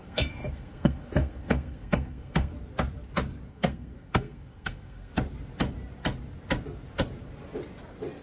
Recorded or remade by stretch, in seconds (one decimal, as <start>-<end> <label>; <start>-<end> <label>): 0.0-2.5 remade; 2.5-3.5 recorded; 3.5-5.1 remade; 5.1-8.2 recorded

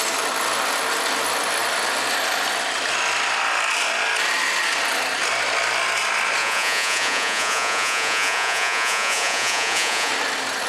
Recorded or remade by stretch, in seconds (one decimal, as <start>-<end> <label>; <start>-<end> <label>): 0.0-6.4 recorded; 6.4-10.1 remade; 10.1-10.7 recorded